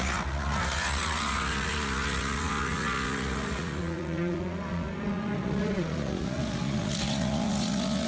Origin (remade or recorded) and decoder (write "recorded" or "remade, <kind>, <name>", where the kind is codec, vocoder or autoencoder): remade, vocoder, Vocos